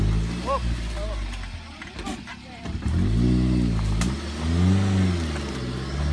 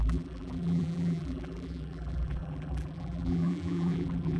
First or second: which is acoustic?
first